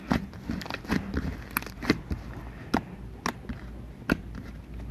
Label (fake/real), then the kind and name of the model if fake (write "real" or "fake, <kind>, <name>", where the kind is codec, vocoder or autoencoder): real